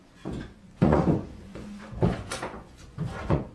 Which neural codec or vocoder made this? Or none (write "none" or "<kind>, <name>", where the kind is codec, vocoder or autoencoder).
vocoder, Vocos